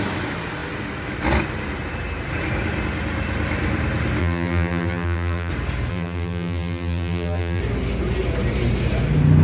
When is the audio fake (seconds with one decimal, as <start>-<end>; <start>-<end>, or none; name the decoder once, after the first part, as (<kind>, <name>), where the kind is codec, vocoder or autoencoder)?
4.2-5.5 (vocoder, BigVGAN v2); 5.9-7.6